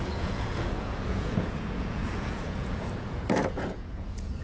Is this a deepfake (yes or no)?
yes